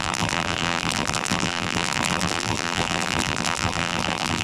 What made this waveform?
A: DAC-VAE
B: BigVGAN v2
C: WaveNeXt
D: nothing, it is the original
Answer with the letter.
B